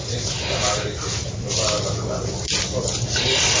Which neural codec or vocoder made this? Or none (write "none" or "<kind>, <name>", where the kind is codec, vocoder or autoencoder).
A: none